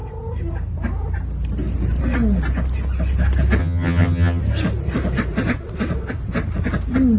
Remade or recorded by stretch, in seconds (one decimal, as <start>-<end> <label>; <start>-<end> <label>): 0.0-3.6 recorded; 3.6-4.4 remade; 4.4-7.2 recorded